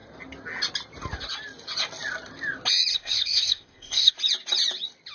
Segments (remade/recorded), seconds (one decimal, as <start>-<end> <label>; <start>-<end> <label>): 0.0-2.9 recorded; 2.9-4.1 remade; 4.1-5.1 recorded